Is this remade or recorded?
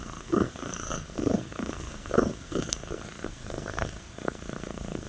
remade